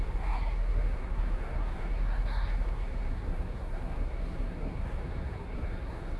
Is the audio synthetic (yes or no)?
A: yes